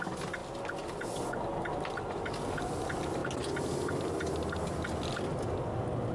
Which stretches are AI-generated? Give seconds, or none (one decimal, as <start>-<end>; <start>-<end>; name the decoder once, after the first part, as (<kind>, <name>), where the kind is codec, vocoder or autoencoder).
none